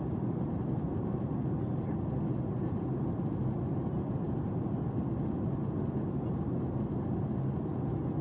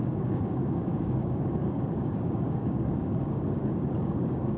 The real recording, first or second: first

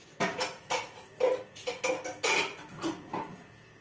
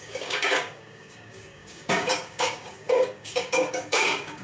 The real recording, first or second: first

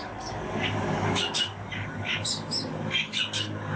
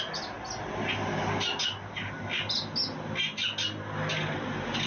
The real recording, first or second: second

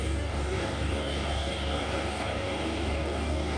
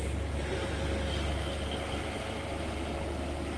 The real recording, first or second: second